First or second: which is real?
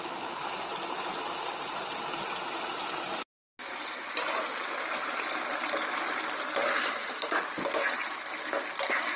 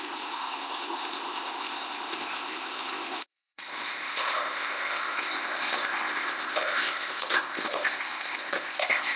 first